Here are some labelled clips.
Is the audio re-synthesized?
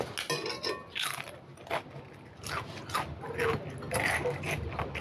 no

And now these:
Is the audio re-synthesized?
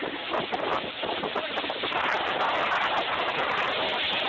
no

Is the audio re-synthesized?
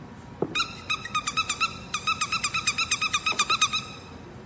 no